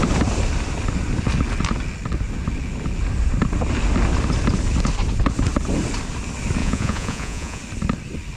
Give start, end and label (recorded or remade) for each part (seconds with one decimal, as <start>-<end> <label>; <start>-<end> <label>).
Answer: 0.0-6.6 recorded; 6.6-7.6 remade; 7.6-8.4 recorded